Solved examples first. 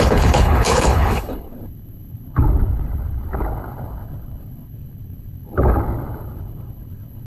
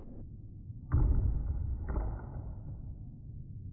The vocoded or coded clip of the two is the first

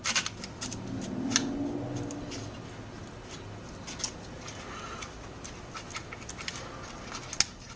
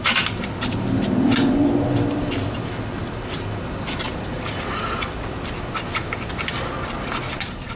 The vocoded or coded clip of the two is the second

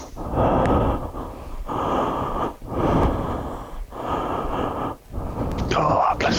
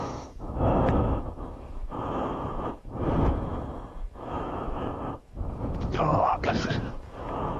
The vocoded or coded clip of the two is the second